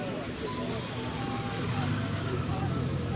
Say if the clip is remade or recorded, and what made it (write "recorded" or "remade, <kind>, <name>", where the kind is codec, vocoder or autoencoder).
recorded